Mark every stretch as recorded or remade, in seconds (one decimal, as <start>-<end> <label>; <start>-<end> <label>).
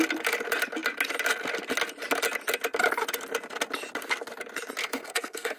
0.0-4.8 recorded; 4.8-5.6 remade